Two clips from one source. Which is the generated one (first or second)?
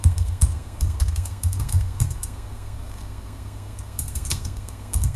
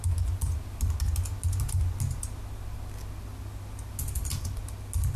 first